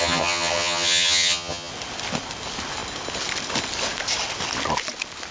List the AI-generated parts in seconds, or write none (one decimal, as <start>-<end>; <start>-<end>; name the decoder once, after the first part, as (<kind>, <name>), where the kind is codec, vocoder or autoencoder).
0.0-1.7 (vocoder, HiFi-GAN)